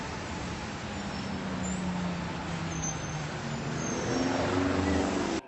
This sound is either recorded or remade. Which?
recorded